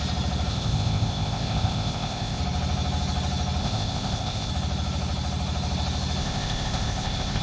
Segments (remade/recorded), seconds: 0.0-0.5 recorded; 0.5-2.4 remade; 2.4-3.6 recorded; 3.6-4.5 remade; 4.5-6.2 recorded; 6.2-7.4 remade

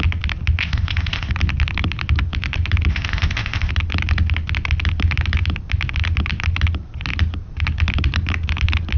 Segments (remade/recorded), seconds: 0.0-0.6 recorded; 0.6-1.3 remade; 1.3-2.9 recorded; 2.9-3.7 remade; 3.7-9.0 recorded

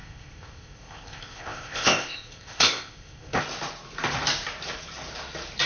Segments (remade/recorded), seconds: 0.0-3.4 remade; 3.4-5.7 recorded

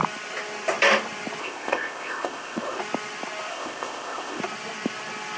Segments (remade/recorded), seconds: 0.0-1.4 recorded; 1.4-2.8 remade; 2.8-3.5 recorded; 3.5-4.4 remade; 4.4-5.4 recorded

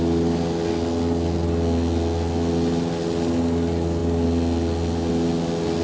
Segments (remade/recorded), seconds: 0.0-5.8 recorded

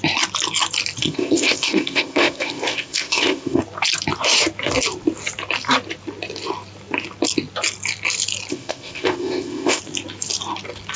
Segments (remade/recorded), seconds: 0.0-1.0 recorded; 1.0-3.6 remade; 3.6-8.5 recorded; 8.5-9.8 remade; 9.8-11.0 recorded